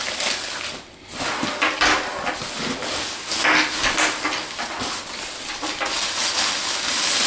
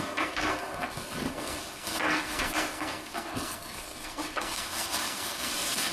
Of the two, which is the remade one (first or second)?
second